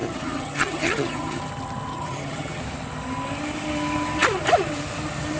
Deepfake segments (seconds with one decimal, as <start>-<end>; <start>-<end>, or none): 0.0-1.4; 1.9-2.6